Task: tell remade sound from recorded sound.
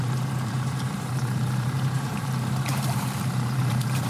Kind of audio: remade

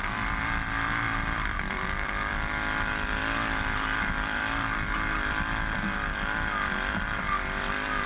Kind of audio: remade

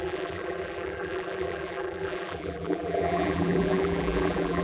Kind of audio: remade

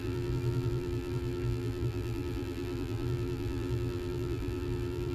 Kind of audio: remade